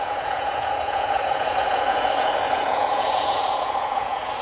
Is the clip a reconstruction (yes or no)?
yes